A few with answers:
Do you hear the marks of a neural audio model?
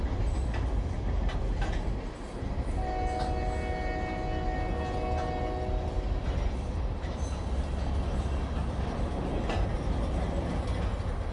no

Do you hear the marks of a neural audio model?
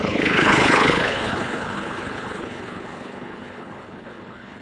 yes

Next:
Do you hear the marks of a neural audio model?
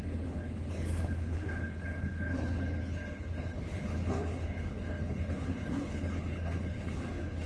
yes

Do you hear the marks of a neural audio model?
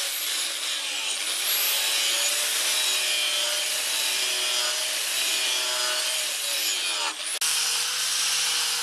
no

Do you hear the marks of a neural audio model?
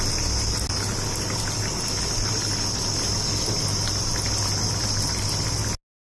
no